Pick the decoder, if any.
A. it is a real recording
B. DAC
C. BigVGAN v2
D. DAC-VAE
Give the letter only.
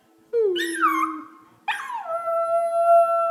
A